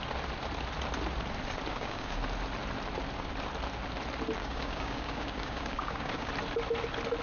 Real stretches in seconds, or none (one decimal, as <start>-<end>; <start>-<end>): 0.0-1.7; 2.2-4.4; 6.3-7.2